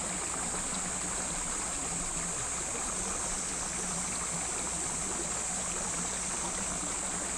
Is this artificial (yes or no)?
no